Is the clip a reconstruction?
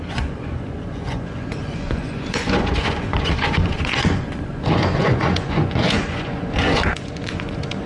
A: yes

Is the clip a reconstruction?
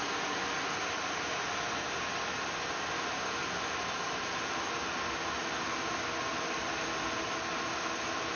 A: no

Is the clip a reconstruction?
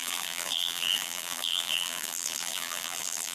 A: yes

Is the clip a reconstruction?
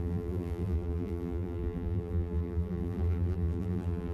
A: yes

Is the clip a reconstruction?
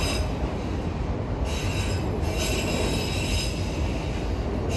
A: no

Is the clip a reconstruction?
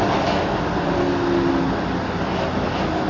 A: no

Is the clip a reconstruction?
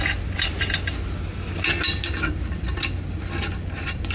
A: no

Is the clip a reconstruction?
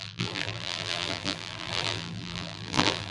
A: yes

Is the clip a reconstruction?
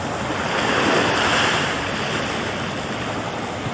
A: no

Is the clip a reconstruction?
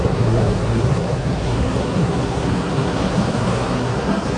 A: yes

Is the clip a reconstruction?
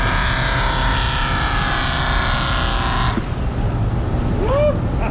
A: no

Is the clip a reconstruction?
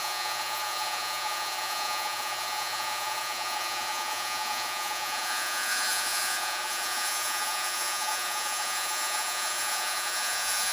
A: yes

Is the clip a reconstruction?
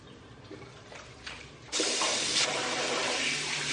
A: yes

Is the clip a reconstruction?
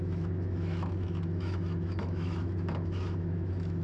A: yes